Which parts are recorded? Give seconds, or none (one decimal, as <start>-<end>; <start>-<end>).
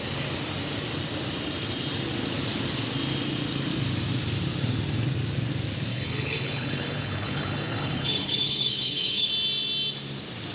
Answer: 0.0-5.9; 9.3-10.5